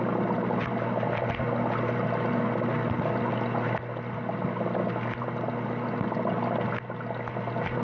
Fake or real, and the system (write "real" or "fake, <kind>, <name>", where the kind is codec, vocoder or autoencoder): real